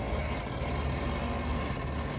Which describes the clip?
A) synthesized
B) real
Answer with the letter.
B